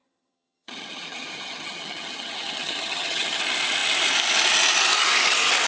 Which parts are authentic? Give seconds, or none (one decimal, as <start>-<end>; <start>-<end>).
3.4-5.7